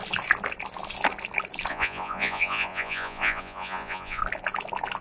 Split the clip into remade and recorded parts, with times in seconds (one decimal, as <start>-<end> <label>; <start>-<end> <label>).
0.0-1.7 recorded; 1.7-4.2 remade; 4.2-5.0 recorded